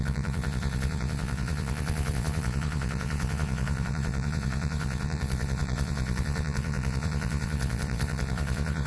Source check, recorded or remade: remade